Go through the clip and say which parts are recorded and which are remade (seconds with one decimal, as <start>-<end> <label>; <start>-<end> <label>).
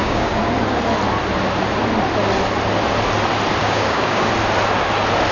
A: 0.0-0.4 remade; 0.4-3.6 recorded; 3.6-4.3 remade; 4.3-5.3 recorded